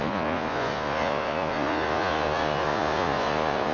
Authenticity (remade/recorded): remade